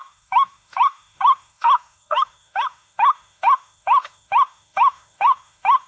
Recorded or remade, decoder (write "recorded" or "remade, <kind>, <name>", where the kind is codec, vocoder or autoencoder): remade, autoencoder, DAC-VAE